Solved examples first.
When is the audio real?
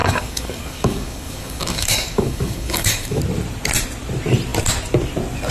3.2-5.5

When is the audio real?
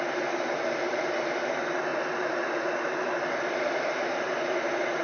none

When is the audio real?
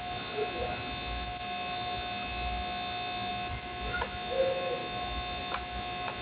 0.0-6.2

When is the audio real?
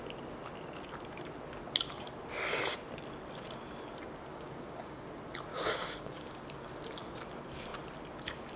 0.0-4.3; 5.0-5.5; 6.4-8.6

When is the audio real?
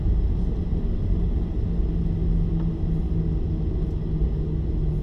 0.0-5.0